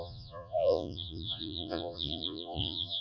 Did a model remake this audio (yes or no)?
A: yes